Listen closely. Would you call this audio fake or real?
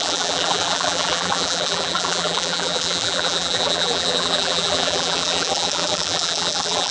fake